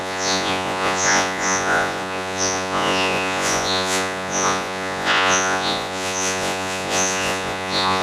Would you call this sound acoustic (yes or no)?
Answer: no